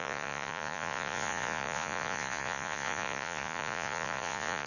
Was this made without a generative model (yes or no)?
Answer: no